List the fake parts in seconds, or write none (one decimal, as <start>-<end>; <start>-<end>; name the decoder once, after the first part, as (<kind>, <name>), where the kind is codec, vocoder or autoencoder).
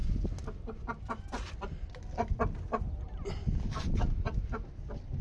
none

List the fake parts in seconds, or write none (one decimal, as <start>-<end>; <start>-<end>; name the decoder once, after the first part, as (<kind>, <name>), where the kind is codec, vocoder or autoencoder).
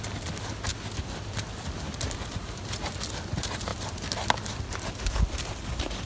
3.7-4.9 (vocoder, BigVGAN v2)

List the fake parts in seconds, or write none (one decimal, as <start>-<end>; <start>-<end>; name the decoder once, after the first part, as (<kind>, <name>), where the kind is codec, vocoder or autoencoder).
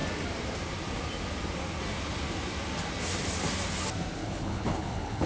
4.2-5.3 (codec, HILCodec)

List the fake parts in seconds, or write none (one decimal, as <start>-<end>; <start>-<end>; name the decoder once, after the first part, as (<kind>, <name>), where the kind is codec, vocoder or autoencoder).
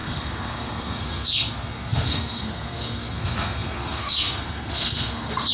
0.0-5.5 (codec, SNAC)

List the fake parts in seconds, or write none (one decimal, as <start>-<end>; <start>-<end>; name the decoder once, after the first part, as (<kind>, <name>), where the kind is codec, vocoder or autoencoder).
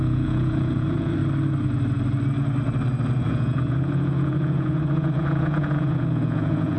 0.0-1.2 (vocoder, Vocos); 3.2-6.8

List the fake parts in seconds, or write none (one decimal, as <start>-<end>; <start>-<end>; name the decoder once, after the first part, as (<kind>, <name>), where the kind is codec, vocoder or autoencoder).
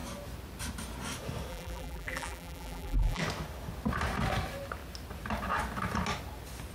1.5-3.2 (vocoder, BigVGAN v2)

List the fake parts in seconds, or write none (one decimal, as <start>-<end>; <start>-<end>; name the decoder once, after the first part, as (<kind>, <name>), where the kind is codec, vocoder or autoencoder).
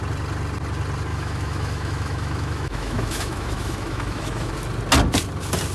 1.1-4.5 (autoencoder, DAC-VAE)